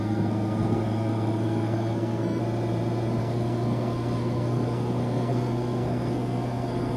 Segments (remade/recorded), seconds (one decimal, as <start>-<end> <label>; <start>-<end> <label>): 0.0-2.4 remade; 2.4-3.2 recorded; 3.2-7.0 remade